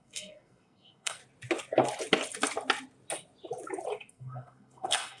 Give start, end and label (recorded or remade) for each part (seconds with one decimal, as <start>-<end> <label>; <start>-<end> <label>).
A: 0.0-1.2 remade; 1.2-4.1 recorded; 4.1-5.2 remade